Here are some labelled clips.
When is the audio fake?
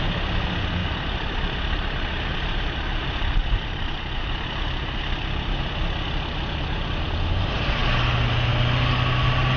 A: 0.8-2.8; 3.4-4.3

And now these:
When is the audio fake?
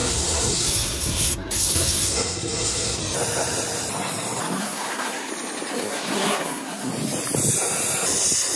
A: 0.0-3.0; 4.6-5.3; 5.7-6.9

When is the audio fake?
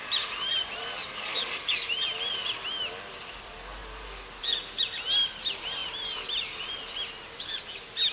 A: 0.5-1.7; 5.8-6.7